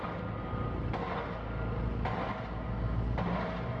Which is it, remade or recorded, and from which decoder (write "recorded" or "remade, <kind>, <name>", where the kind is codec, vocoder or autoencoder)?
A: recorded